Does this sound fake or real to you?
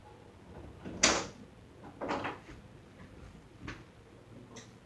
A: real